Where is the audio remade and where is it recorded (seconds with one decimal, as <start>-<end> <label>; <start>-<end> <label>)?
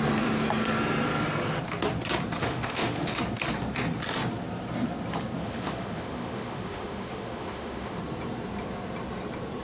0.0-2.4 recorded; 2.4-3.2 remade; 3.2-5.4 recorded; 5.4-8.0 remade; 8.0-9.6 recorded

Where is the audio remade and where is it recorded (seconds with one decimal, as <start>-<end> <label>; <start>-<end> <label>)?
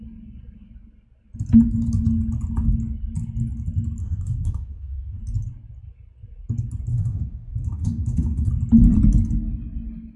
0.0-4.0 recorded; 4.0-5.2 remade; 5.2-6.9 recorded; 6.9-8.5 remade; 8.5-10.2 recorded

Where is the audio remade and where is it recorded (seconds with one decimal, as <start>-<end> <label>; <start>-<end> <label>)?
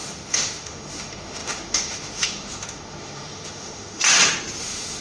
0.0-4.0 remade; 4.0-4.6 recorded; 4.6-5.0 remade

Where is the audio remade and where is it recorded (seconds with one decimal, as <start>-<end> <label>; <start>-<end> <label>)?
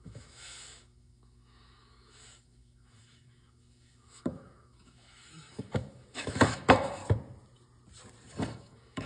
0.0-7.0 remade; 7.0-8.4 recorded; 8.4-9.1 remade